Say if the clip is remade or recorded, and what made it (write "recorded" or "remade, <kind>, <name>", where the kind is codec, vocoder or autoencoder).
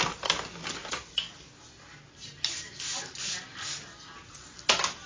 recorded